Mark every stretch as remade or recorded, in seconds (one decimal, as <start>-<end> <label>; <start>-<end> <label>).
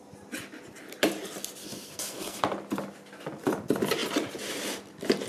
0.0-1.6 recorded; 1.6-2.4 remade; 2.4-5.3 recorded